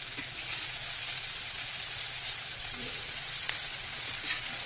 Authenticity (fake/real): fake